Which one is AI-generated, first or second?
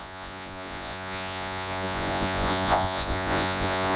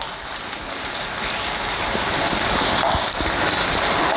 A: first